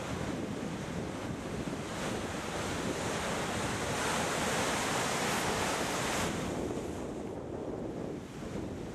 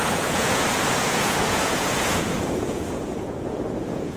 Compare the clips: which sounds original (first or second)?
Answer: first